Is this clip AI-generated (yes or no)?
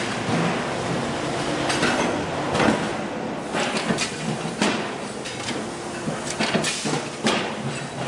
no